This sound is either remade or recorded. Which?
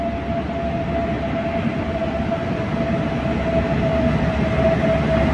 recorded